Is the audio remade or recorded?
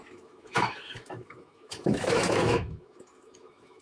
remade